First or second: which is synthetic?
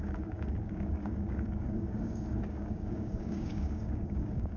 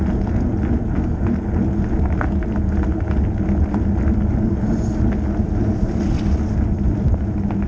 first